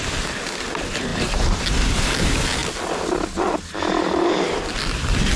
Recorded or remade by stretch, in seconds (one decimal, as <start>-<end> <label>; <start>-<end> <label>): 0.0-5.4 recorded